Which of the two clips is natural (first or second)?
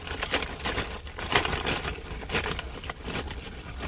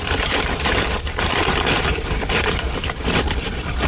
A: first